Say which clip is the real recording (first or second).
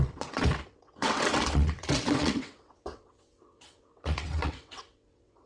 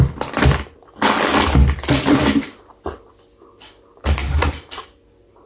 second